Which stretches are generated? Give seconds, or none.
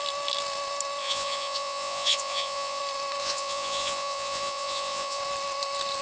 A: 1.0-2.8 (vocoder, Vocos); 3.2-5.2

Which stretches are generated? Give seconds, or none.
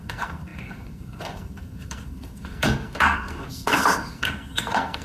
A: 0.0-5.0 (codec, SNAC)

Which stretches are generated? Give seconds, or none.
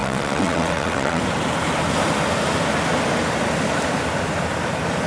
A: 0.0-1.2 (vocoder, WaveNeXt)